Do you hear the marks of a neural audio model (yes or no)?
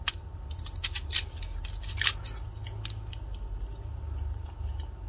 no